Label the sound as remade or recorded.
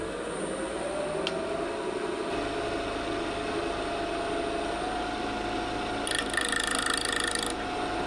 recorded